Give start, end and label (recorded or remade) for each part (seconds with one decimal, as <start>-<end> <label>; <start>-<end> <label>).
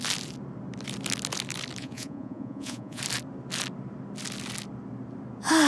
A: 0.0-1.8 recorded; 1.8-3.0 remade; 3.0-5.7 recorded